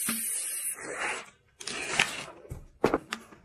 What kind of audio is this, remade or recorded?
recorded